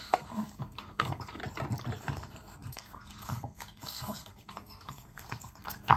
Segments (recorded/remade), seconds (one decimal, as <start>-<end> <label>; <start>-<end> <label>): 0.0-1.4 remade; 1.4-2.0 recorded; 2.0-6.0 remade